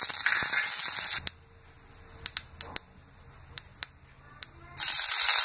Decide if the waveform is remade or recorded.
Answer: recorded